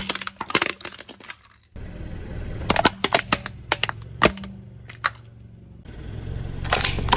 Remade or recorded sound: recorded